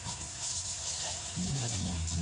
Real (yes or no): no